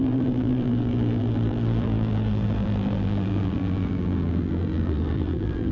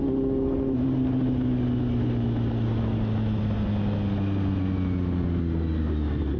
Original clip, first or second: second